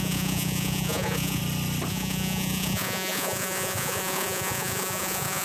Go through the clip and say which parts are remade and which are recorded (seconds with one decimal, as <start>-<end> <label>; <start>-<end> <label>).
0.0-1.4 remade; 1.4-1.9 recorded; 1.9-5.4 remade